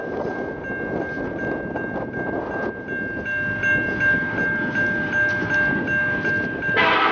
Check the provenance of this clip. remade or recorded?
recorded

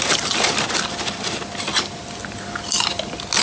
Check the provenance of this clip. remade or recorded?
recorded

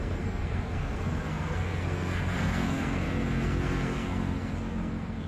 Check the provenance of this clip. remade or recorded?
remade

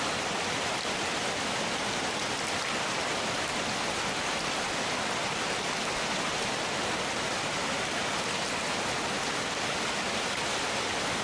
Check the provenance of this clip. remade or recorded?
recorded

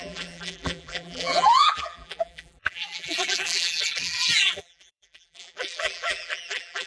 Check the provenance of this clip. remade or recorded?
remade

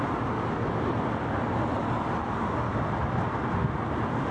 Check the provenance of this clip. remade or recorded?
recorded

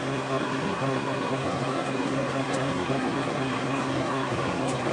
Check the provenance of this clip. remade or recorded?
remade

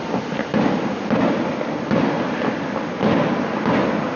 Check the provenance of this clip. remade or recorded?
recorded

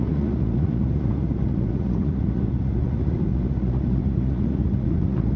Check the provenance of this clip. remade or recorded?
remade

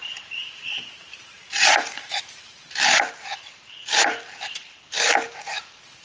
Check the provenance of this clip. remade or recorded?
remade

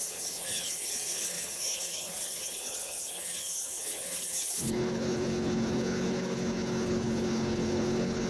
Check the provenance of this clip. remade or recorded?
remade